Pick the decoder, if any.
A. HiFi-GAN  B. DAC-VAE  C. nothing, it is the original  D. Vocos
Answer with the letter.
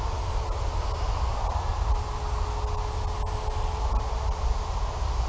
C